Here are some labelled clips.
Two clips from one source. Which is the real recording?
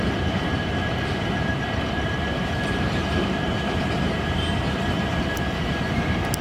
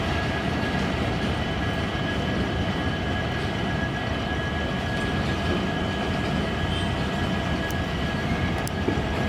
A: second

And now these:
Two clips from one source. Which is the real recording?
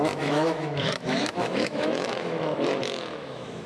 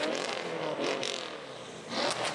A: second